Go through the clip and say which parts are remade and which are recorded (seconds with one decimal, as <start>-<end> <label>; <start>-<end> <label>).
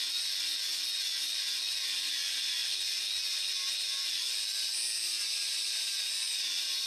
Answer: 0.0-6.9 recorded